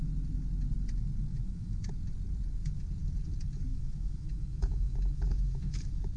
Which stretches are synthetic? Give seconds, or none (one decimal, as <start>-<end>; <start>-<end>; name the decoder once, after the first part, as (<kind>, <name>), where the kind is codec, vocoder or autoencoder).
1.3-1.9 (autoencoder, DAC-VAE); 3.7-6.2